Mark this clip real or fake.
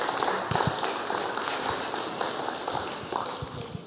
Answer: real